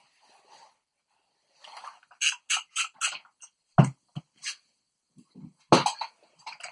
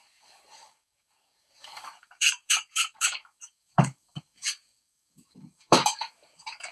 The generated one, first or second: second